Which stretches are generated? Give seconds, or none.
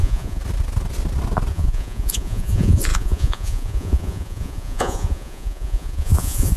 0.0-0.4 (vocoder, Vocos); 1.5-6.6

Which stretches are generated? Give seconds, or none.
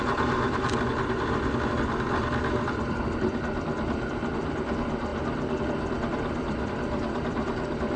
0.0-5.1 (vocoder, BigVGAN v2); 5.6-8.0